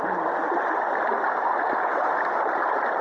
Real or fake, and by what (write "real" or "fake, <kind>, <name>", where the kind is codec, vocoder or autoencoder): real